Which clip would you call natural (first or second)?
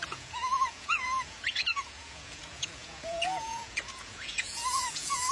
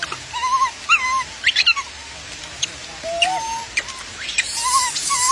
second